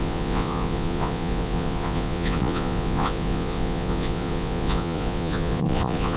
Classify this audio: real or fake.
fake